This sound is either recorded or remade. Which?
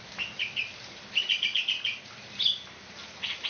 recorded